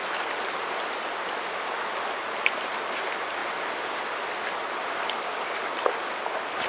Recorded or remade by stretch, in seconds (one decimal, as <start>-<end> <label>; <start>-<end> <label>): 0.0-6.7 recorded